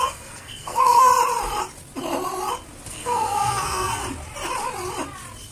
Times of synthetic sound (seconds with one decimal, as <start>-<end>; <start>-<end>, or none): 0.0-1.1; 2.9-4.0